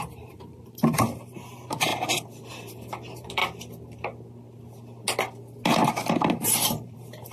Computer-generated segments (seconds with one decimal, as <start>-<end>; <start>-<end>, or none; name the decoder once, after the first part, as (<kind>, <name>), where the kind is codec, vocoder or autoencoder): 0.0-1.9 (vocoder, BigVGAN v2); 2.5-3.4; 6.2-7.3